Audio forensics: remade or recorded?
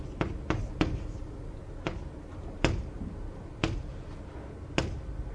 recorded